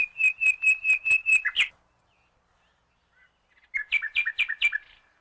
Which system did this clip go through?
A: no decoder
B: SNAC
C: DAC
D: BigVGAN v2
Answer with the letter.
A